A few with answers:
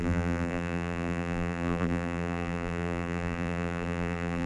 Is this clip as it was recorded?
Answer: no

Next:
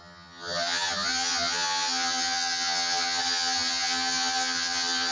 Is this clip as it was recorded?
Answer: no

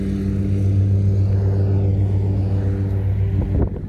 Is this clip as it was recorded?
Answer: yes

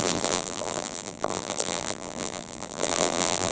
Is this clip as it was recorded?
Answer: no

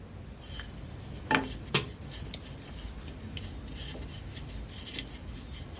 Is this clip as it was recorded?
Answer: yes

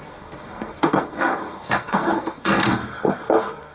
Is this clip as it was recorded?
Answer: no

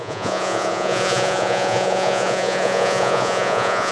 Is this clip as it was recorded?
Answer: no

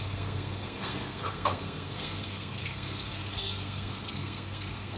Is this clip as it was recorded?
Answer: no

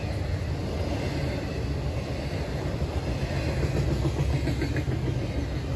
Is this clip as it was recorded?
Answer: yes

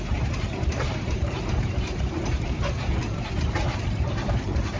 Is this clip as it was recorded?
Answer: no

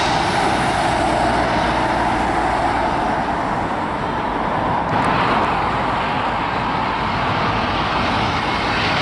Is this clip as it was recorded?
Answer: yes